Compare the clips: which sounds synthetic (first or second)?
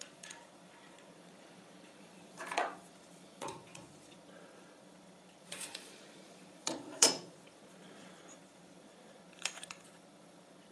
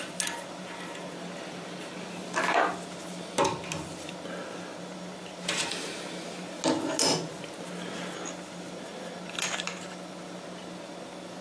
first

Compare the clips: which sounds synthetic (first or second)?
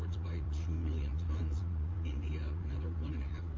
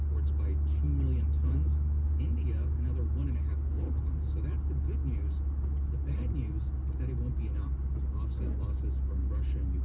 first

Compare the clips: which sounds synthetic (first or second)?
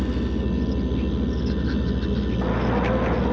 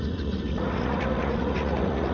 second